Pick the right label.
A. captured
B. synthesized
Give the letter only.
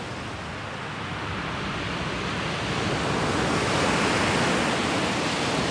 A